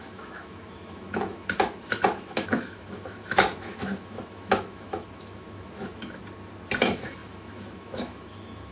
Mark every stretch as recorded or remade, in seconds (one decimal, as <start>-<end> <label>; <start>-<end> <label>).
0.0-6.2 remade; 6.2-6.8 recorded; 6.8-8.7 remade